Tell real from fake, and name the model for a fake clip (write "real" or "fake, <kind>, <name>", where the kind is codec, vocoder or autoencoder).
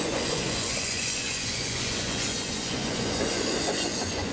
fake, vocoder, Vocos